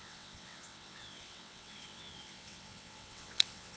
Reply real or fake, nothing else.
fake